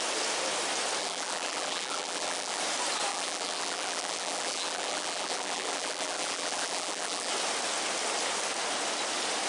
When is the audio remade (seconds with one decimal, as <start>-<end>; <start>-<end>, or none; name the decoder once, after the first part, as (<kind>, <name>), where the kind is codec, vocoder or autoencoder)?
1.0-2.6 (vocoder, BigVGAN v2); 3.1-7.3